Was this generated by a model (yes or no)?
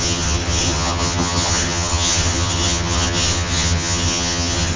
yes